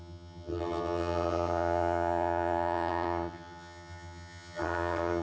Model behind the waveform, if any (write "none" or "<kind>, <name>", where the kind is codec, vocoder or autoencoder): vocoder, HiFi-GAN